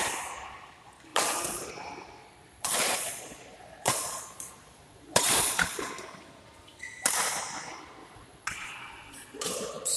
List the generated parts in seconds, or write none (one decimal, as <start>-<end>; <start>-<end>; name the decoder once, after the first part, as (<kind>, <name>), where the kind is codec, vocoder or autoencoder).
1.1-1.7 (vocoder, Vocos); 2.2-5.9; 8.0-10.0